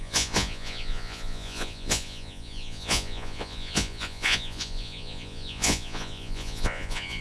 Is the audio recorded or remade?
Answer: remade